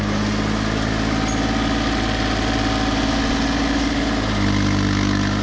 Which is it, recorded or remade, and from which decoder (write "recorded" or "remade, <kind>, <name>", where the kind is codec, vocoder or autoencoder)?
recorded